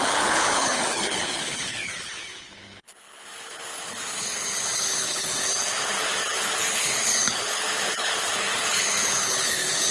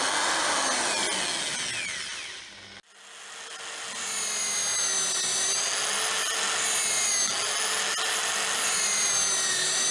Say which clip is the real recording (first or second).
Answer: second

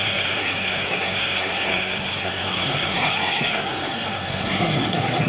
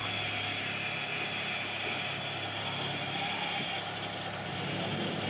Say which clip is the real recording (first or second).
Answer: second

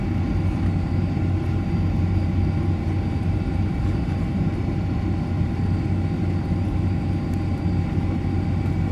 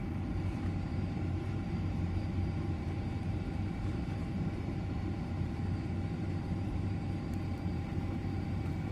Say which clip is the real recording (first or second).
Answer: first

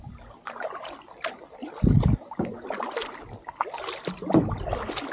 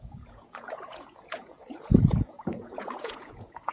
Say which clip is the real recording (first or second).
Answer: first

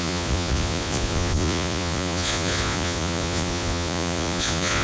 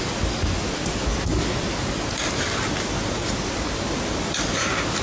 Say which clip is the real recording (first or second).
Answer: second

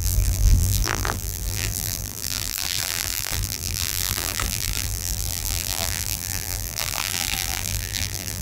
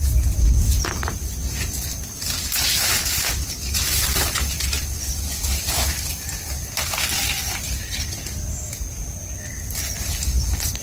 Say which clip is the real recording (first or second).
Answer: second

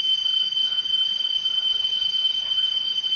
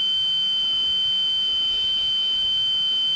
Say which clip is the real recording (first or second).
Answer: second